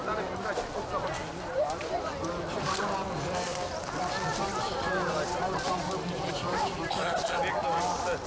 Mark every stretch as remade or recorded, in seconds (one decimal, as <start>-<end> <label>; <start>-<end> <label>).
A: 0.0-8.3 recorded

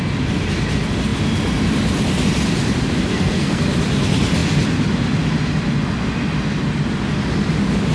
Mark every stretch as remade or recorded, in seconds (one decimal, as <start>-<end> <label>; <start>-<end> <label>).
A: 0.0-3.1 recorded; 3.1-3.6 remade; 3.6-7.9 recorded